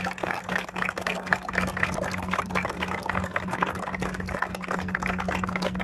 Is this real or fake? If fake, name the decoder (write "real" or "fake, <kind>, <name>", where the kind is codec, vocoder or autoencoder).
fake, codec, SNAC